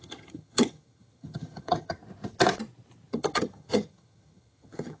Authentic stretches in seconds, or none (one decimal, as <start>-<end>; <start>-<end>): 2.0-3.1

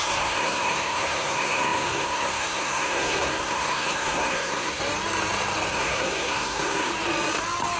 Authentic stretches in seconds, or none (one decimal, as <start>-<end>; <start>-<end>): 4.8-5.7; 6.9-7.8

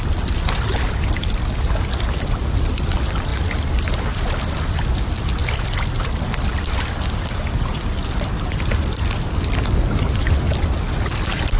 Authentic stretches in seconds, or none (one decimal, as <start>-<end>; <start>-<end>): 0.0-11.6

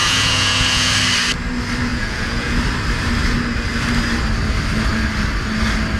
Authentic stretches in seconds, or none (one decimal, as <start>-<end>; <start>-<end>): 0.9-1.9; 2.5-6.0

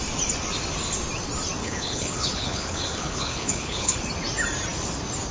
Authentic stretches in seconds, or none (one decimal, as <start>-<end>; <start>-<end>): 0.0-1.6; 4.0-5.3

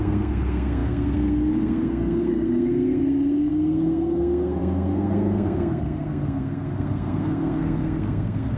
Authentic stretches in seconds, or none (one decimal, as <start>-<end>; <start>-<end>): none

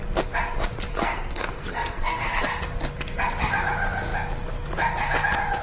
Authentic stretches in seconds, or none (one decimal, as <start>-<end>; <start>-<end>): 0.0-0.9; 2.4-5.6

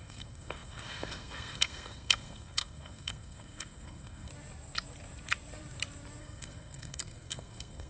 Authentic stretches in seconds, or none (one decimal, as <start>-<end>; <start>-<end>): 4.3-6.2